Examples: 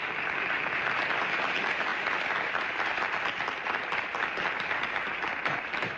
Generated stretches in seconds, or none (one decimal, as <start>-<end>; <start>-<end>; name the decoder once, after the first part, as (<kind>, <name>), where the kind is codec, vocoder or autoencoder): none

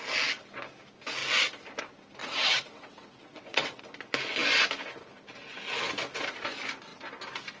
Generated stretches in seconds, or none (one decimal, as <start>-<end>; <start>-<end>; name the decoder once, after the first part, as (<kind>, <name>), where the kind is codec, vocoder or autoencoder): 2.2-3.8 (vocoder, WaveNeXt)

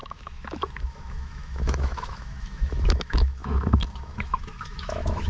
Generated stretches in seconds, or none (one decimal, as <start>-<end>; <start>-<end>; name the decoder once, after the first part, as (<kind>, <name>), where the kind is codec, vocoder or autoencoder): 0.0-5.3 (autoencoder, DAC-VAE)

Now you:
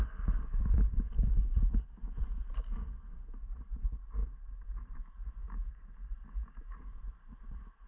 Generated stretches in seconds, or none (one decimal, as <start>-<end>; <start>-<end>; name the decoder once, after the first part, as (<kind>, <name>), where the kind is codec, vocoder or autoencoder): 4.2-5.9 (vocoder, BigVGAN v2)